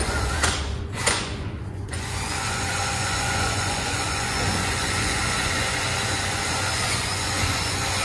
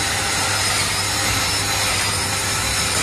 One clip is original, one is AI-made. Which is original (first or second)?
second